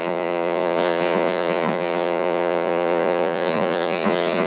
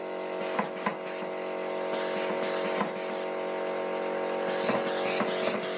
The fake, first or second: first